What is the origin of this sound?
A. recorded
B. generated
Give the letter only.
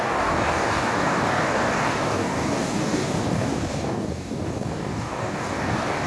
B